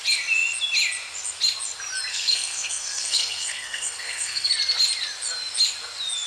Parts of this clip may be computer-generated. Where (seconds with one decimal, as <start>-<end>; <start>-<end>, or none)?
2.1-4.5